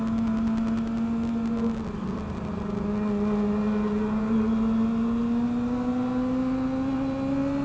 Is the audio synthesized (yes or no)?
no